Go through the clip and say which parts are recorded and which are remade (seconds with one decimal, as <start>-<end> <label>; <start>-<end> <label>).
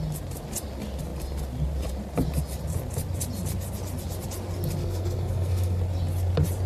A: 0.0-4.8 recorded; 4.8-5.8 remade; 5.8-6.7 recorded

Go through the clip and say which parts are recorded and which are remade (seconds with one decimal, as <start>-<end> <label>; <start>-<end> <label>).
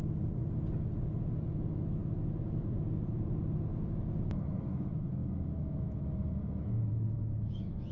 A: 0.0-0.4 remade; 0.4-1.6 recorded; 1.6-2.0 remade; 2.0-4.0 recorded; 4.0-7.9 remade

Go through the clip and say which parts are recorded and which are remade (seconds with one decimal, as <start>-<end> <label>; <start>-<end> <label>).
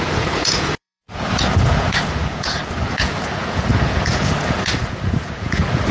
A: 0.0-5.9 remade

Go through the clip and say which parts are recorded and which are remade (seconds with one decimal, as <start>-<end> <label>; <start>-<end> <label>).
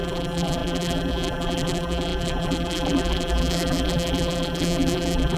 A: 0.0-5.4 remade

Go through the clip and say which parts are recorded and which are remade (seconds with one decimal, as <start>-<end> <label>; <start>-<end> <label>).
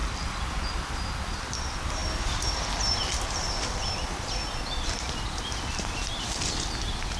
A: 0.0-7.2 recorded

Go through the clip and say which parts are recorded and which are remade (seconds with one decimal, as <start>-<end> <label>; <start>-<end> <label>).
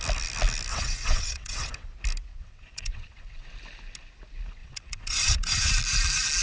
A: 0.0-0.7 recorded; 0.7-1.7 remade; 1.7-2.3 recorded; 2.3-3.5 remade; 3.5-4.6 recorded; 4.6-5.7 remade; 5.7-6.4 recorded